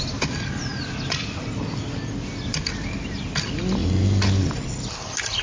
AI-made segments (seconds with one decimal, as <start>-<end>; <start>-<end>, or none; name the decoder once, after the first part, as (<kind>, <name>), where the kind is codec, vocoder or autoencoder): none